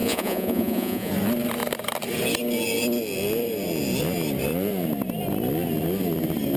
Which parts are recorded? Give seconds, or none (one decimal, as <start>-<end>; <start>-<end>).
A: 1.1-6.6